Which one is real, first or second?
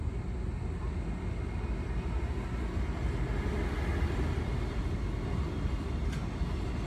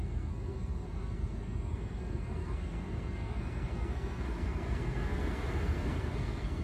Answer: first